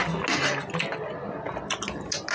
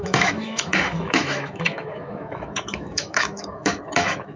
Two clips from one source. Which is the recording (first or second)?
first